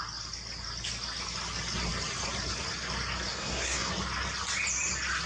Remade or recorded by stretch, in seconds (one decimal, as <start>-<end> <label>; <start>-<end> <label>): 0.0-3.3 recorded; 3.3-3.9 remade; 3.9-5.3 recorded